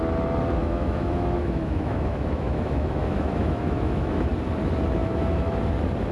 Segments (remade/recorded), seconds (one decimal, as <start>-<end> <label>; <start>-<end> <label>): 0.0-0.6 recorded; 0.6-4.3 remade; 4.3-5.0 recorded; 5.0-5.6 remade; 5.6-6.1 recorded